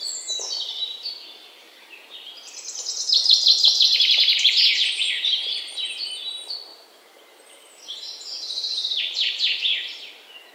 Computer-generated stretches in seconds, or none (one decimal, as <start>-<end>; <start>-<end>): 1.6-6.1; 6.7-10.1